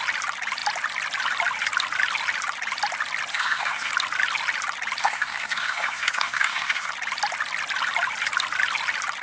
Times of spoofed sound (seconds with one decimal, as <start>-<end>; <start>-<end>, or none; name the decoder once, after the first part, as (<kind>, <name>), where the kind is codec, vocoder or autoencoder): 3.3-3.9 (codec, SNAC); 5.0-6.9

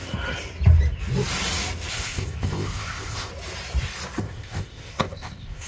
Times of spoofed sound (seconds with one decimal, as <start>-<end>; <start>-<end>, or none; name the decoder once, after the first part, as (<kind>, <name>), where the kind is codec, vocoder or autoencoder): 1.9-3.3 (codec, ZipCodec); 4.2-5.7